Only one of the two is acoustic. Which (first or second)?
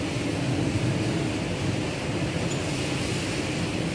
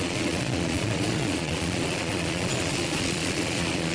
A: first